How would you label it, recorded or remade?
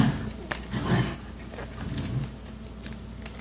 recorded